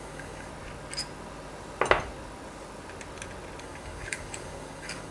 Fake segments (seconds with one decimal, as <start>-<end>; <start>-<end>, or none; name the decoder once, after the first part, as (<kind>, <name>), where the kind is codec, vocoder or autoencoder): 0.0-0.5 (codec, DAC); 3.6-5.1